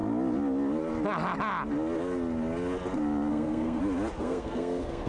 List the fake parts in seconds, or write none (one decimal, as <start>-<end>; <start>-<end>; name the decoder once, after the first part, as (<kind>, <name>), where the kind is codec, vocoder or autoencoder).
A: 3.3-3.8 (codec, SNAC); 4.2-5.1